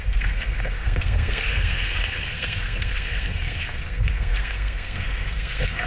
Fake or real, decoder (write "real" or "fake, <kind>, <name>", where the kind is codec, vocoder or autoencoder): fake, codec, SNAC